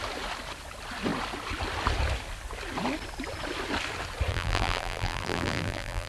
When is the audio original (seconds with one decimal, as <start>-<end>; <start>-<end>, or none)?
0.0-4.3